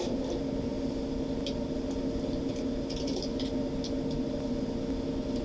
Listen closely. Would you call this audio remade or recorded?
recorded